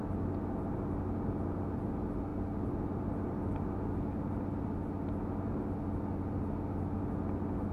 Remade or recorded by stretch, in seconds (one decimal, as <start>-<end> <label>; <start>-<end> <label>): 0.0-7.7 recorded